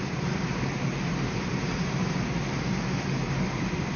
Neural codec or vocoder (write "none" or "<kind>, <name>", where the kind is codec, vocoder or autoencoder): none